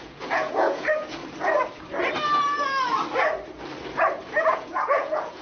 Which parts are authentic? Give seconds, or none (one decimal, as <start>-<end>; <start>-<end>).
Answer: 1.2-4.4